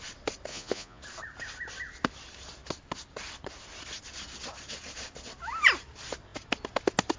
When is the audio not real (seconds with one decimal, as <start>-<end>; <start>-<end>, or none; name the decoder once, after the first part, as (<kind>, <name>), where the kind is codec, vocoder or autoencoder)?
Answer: 0.5-1.0 (vocoder, Vocos)